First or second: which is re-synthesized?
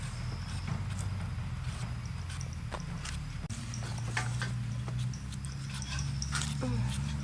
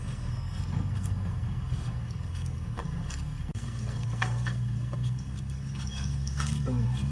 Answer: second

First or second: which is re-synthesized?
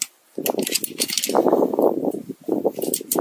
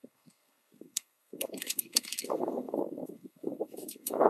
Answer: second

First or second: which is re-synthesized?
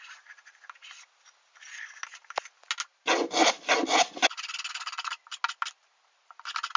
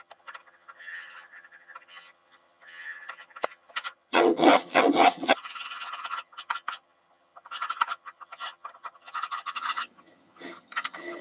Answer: second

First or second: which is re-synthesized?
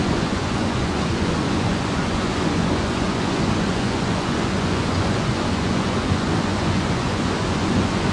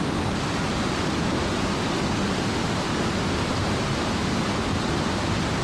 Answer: first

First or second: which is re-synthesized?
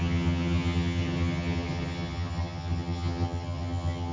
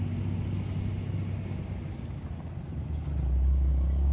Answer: first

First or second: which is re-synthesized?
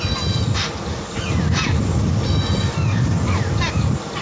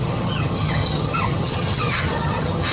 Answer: second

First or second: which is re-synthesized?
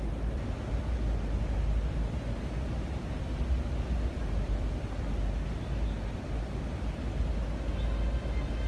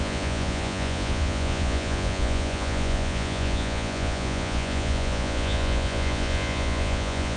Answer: second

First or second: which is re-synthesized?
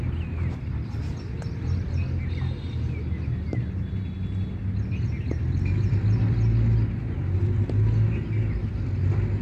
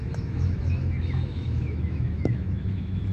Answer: second